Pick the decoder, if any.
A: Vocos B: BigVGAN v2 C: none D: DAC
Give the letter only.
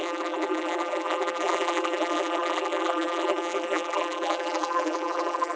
B